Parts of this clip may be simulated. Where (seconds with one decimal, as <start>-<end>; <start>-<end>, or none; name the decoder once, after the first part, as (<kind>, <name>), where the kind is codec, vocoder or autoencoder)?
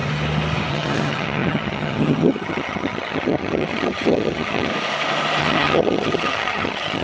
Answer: 0.7-4.7 (vocoder, HiFi-GAN); 5.4-7.0